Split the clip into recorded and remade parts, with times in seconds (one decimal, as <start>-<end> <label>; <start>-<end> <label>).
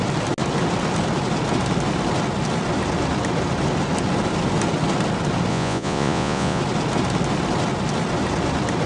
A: 0.0-5.5 recorded; 5.5-6.6 remade; 6.6-8.9 recorded